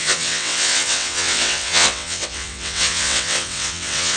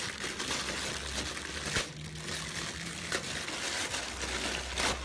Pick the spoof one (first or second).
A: first